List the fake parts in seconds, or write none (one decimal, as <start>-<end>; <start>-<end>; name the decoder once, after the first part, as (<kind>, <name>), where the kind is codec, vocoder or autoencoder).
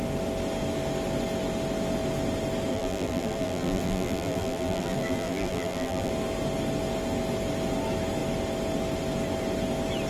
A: 2.7-6.1 (vocoder, BigVGAN v2)